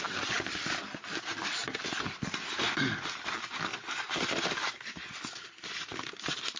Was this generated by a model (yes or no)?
no